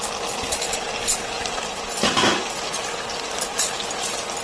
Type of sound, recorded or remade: recorded